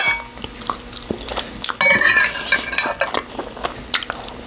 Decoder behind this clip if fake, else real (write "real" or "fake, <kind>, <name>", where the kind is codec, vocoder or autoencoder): real